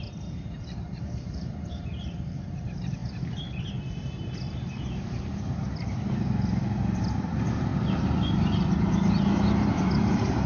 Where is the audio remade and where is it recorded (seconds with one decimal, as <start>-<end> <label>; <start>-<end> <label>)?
0.0-3.0 remade; 3.0-3.6 recorded; 3.6-7.7 remade; 7.7-10.1 recorded; 10.1-10.5 remade